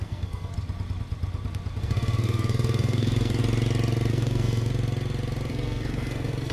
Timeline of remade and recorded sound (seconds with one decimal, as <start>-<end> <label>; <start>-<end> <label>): 0.0-0.5 remade; 0.5-1.8 recorded; 1.8-3.4 remade; 3.4-4.1 recorded; 4.1-4.7 remade; 4.7-5.5 recorded; 5.5-6.5 remade